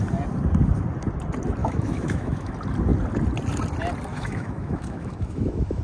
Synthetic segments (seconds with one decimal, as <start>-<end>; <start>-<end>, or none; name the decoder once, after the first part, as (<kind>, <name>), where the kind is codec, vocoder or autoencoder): 1.6-2.5 (autoencoder, DAC-VAE); 4.1-5.8